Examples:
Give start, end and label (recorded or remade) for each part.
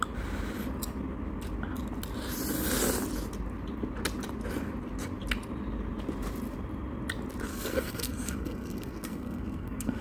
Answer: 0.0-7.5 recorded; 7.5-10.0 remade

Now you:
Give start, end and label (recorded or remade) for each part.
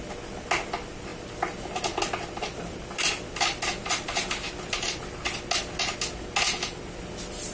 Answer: 0.0-7.5 recorded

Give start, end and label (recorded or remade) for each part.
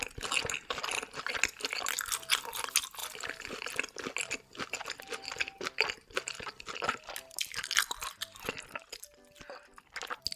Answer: 0.0-10.4 recorded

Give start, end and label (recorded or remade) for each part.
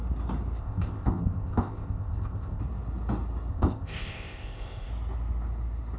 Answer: 0.0-0.6 recorded; 0.6-2.6 remade; 2.6-3.5 recorded; 3.5-4.9 remade; 4.9-6.0 recorded